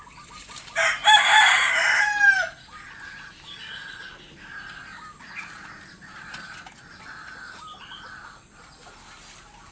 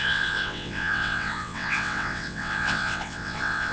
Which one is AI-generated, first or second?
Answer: second